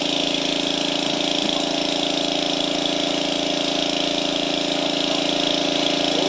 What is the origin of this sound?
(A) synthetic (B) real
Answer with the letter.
B